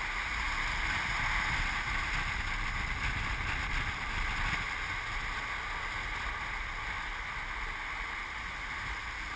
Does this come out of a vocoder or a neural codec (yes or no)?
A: no